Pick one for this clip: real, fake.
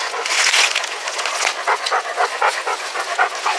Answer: fake